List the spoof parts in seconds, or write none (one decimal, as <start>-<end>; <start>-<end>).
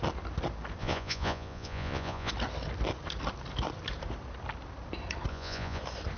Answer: 0.8-2.3; 5.3-5.8